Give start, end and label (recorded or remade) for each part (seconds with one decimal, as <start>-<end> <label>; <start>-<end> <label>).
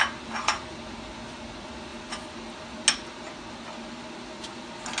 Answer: 0.0-5.0 recorded